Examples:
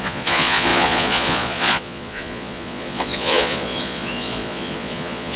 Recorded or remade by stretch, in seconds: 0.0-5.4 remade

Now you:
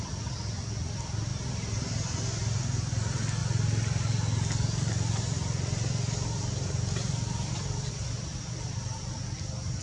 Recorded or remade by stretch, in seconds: 0.0-9.8 recorded

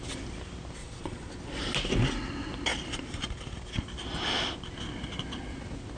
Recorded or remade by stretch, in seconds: 0.0-0.8 recorded; 0.8-1.3 remade; 1.3-6.0 recorded

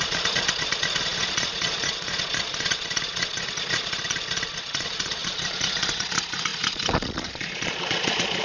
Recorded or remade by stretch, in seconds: 0.0-8.4 remade